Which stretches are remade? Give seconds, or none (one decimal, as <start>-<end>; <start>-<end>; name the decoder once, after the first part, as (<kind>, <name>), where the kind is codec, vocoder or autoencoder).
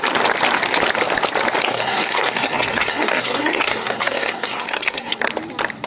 1.7-5.2 (codec, SNAC)